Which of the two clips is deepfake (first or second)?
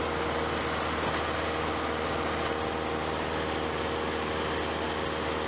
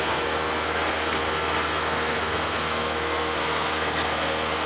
second